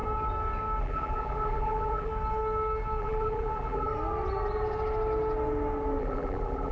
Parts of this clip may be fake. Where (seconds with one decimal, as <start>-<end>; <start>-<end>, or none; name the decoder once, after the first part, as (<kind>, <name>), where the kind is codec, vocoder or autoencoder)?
0.8-2.1 (vocoder, BigVGAN v2); 3.0-3.9; 6.0-6.7